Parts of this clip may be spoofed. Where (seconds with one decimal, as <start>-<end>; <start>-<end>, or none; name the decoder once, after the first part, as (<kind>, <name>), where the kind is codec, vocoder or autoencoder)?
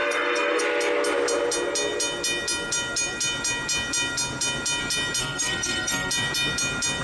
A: 0.0-0.6 (codec, SNAC); 5.2-6.1